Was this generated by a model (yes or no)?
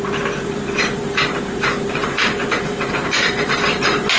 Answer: yes